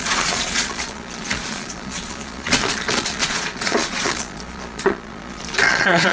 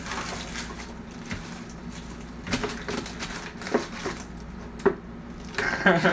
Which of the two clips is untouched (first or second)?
second